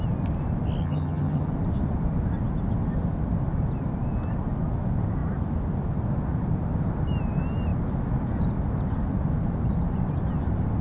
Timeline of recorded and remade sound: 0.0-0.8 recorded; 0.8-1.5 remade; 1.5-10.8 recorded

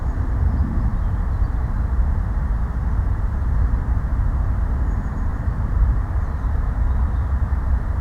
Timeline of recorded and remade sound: 0.0-8.0 remade

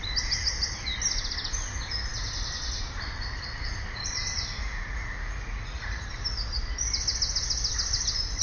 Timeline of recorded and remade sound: 0.0-4.6 recorded; 4.6-6.1 remade; 6.1-8.4 recorded